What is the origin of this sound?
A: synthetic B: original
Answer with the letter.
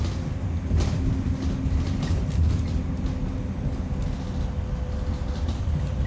B